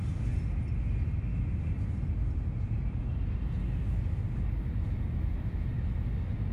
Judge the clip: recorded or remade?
recorded